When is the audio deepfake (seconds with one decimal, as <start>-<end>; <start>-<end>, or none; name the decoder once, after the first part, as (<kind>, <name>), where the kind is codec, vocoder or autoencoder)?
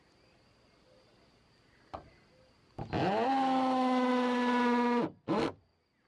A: none